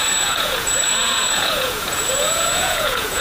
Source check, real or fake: fake